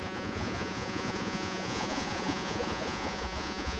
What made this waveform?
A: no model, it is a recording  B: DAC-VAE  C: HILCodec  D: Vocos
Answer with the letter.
D